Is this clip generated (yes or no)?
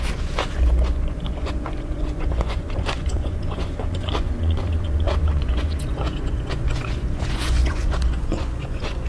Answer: yes